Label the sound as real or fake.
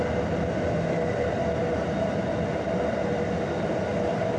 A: real